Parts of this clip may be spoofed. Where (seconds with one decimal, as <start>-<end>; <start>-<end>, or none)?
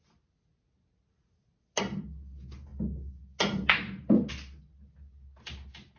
none